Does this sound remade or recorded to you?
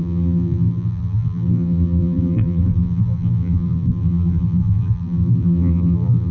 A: remade